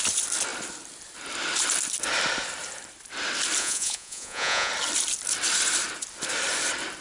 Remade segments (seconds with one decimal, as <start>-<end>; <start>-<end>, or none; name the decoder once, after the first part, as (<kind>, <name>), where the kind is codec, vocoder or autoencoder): 3.6-4.7 (vocoder, Vocos)